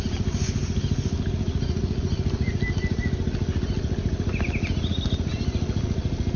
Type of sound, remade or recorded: recorded